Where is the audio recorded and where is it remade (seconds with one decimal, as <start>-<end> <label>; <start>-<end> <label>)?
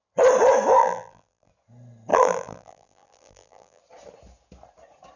0.0-0.8 recorded; 0.8-1.5 remade; 1.5-2.1 recorded; 2.1-3.8 remade; 3.8-5.2 recorded